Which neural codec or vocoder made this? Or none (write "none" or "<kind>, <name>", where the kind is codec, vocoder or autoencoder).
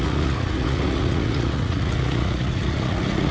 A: vocoder, Vocos